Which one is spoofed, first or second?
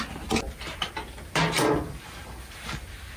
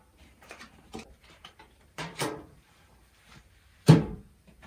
second